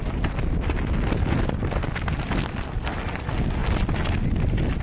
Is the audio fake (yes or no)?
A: no